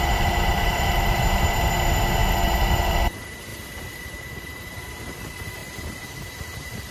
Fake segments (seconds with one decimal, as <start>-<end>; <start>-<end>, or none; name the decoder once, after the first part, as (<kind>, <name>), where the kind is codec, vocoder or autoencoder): 0.0-3.5 (vocoder, BigVGAN v2); 4.1-6.9